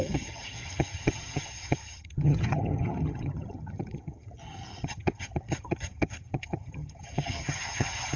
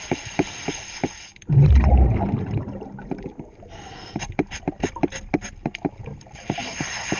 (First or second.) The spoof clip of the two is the first